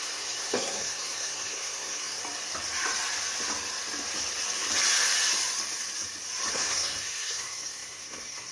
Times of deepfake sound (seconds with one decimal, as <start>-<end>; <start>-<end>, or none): 0.0-2.2; 6.5-8.5